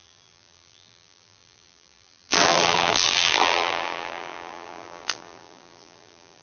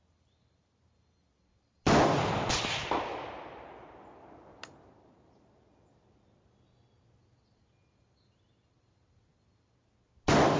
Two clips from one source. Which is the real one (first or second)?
second